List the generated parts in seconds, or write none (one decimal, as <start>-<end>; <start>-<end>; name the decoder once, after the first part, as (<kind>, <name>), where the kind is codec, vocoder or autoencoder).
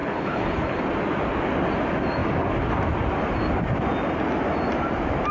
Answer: 0.0-0.8 (codec, HILCodec)